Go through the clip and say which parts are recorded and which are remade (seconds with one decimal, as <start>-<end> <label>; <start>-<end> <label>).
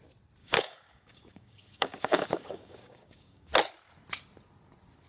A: 0.0-0.4 recorded; 0.4-3.5 remade; 3.5-5.1 recorded